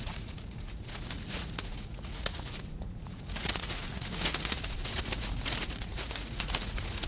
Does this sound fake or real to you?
fake